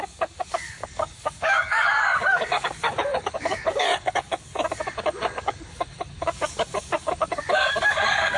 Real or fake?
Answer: fake